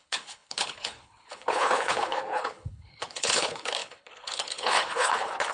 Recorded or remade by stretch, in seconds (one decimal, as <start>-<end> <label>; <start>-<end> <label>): 0.0-5.5 remade